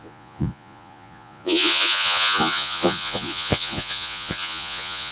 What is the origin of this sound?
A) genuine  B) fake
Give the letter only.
B